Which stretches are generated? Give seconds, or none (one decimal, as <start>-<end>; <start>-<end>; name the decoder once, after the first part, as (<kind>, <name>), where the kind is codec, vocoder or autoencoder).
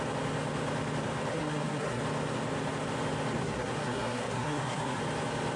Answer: 1.3-2.0 (codec, SNAC); 3.4-5.0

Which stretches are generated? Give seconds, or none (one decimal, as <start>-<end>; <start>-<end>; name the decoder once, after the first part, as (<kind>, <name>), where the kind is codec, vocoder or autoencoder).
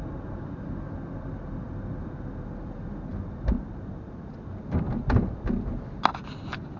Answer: none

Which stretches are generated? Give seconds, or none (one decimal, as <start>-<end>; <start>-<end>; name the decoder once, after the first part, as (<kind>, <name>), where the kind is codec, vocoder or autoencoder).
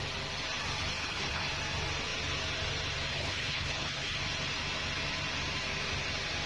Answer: 1.0-1.5 (codec, HILCodec); 3.1-4.2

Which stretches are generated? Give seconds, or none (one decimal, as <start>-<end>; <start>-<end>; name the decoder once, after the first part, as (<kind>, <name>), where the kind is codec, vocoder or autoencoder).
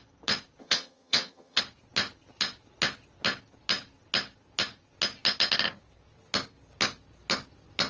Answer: 0.6-1.6 (vocoder, HiFi-GAN)